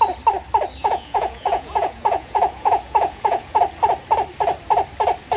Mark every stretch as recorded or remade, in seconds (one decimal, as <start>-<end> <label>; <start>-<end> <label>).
0.0-0.8 recorded; 0.8-3.6 remade; 3.6-5.4 recorded